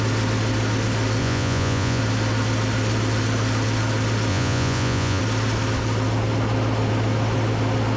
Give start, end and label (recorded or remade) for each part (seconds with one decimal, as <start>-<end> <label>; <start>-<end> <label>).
0.0-1.2 recorded; 1.2-2.0 remade; 2.0-4.3 recorded; 4.3-5.2 remade; 5.2-8.0 recorded